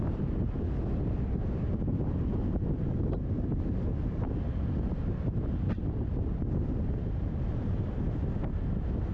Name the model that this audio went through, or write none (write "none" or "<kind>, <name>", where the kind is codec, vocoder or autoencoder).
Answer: none